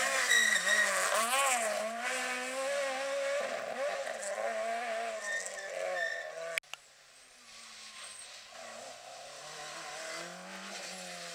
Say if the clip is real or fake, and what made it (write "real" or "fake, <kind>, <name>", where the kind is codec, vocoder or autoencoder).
real